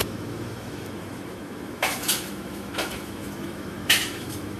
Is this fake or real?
fake